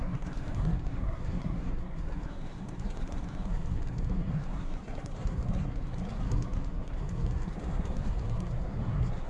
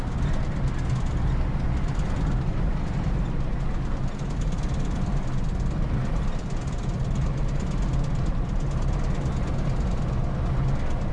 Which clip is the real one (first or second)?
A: second